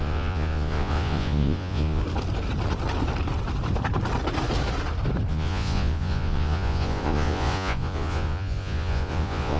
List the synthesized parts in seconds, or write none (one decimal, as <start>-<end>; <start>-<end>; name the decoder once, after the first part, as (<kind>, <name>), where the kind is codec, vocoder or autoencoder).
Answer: 0.0-2.0 (vocoder, Vocos); 5.3-9.6